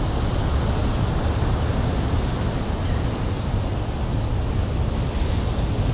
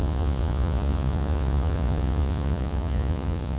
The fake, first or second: second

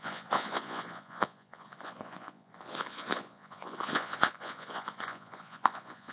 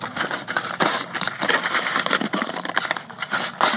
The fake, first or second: first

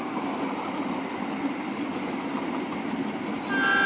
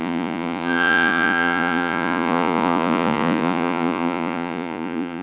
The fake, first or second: second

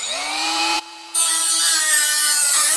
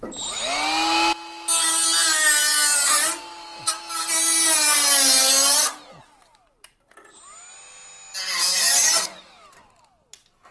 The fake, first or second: first